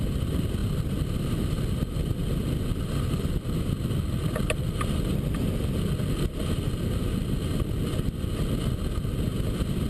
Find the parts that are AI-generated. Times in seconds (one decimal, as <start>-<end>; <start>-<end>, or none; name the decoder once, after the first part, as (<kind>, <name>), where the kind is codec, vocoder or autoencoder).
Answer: none